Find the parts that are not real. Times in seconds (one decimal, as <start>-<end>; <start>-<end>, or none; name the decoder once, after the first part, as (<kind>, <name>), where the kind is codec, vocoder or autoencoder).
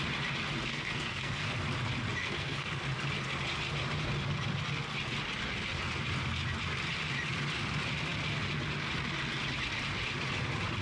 0.7-1.5 (codec, SNAC); 2.2-2.8